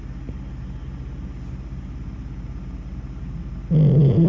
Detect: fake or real real